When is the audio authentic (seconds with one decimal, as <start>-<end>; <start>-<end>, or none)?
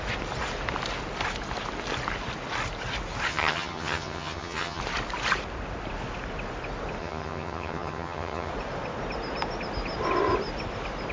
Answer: 0.0-3.3; 4.8-7.0; 8.5-11.1